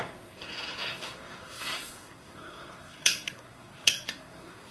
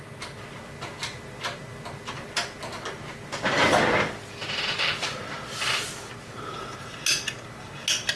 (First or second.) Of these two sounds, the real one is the second